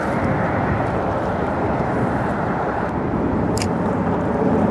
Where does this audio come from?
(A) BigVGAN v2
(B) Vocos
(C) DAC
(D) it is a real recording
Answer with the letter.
A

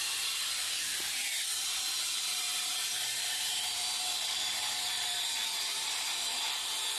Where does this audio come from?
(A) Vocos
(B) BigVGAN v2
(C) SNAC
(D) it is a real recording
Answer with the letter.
B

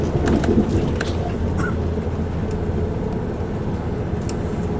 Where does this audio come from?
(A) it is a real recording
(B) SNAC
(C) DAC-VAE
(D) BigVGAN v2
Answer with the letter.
A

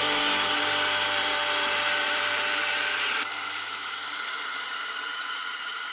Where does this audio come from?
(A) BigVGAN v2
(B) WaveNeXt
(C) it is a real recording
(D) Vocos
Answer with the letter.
A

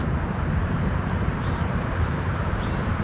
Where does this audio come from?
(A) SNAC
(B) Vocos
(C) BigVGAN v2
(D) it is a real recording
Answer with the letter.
C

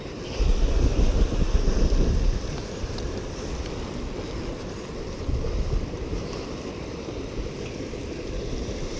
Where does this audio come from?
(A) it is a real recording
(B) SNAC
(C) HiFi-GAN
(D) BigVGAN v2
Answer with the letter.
D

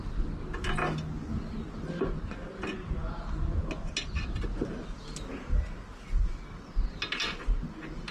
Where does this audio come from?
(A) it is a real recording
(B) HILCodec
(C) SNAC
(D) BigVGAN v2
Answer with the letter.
A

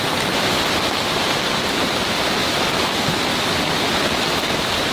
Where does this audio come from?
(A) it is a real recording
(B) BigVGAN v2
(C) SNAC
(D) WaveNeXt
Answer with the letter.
A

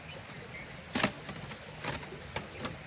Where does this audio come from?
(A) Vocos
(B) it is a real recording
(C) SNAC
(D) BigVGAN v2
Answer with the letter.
B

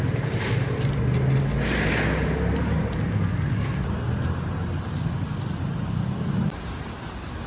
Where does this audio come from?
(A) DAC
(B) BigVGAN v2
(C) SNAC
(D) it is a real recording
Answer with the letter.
D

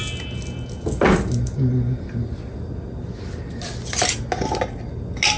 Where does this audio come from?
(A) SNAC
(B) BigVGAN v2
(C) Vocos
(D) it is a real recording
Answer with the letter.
D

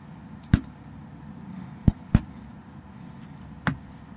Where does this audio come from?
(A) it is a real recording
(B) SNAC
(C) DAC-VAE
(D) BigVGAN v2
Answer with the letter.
A